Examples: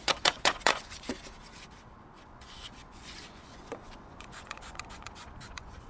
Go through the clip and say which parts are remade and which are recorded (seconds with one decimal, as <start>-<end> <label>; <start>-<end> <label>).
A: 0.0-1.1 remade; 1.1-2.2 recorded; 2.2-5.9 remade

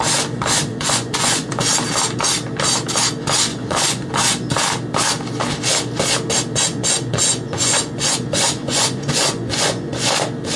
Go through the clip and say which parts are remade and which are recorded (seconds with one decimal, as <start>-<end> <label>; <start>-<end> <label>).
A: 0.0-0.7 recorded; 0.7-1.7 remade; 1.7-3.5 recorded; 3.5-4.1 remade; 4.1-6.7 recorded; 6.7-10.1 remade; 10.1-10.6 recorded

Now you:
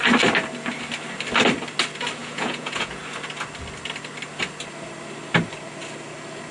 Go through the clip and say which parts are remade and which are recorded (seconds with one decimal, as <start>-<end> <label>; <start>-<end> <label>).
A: 0.0-2.2 recorded; 2.2-3.0 remade; 3.0-6.5 recorded

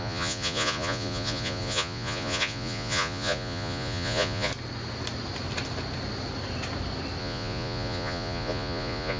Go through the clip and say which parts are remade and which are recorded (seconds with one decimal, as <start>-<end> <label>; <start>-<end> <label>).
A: 0.0-4.5 remade; 4.5-7.2 recorded; 7.2-9.2 remade